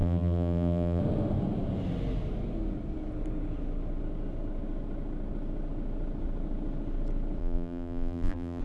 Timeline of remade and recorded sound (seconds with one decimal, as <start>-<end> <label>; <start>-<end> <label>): 0.0-1.0 remade; 1.0-7.4 recorded; 7.4-8.6 remade